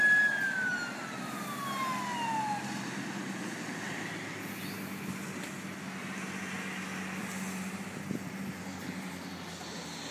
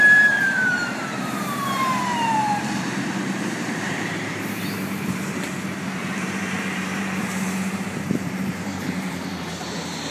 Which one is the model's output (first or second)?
second